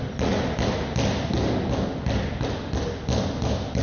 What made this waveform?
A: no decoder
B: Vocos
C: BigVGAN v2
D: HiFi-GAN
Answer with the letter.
A